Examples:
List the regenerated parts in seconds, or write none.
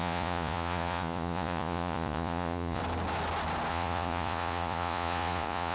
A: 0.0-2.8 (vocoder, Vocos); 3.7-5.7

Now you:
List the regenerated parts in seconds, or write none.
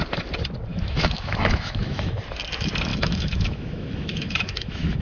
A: 0.7-2.1 (autoencoder, DAC-VAE); 2.9-5.0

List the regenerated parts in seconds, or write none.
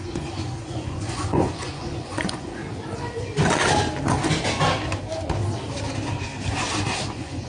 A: 0.0-2.6 (vocoder, Vocos); 7.1-7.5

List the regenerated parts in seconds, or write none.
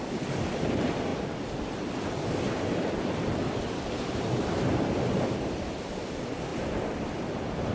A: 1.1-5.7 (vocoder, BigVGAN v2); 6.5-7.1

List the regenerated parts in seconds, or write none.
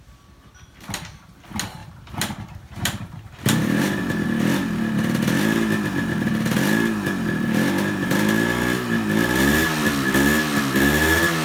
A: 1.8-4.0 (vocoder, BigVGAN v2)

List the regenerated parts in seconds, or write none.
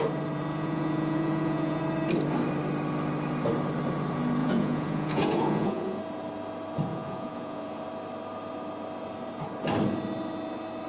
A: 0.5-1.8 (vocoder, Vocos); 4.4-6.0; 6.9-7.8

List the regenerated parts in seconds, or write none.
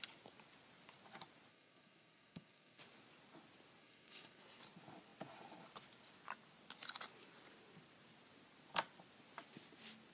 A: 1.5-2.8 (codec, SNAC); 3.8-4.4